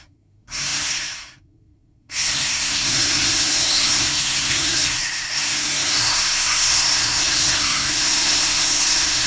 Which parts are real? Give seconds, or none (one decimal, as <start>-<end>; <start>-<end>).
none